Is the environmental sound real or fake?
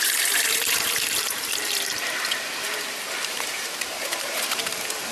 fake